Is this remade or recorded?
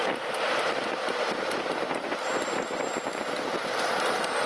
recorded